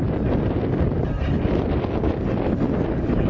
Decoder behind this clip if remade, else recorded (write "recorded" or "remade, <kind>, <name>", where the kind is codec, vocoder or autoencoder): recorded